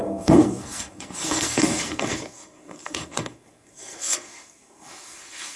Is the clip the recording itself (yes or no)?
no